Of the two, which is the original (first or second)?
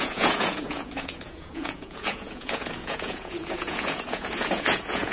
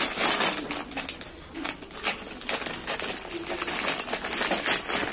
second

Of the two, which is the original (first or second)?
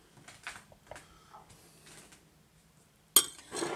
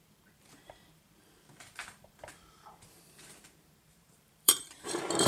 first